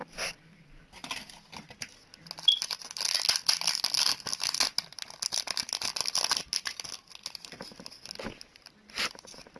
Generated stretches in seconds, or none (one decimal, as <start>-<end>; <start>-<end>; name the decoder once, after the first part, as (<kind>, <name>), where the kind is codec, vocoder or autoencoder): none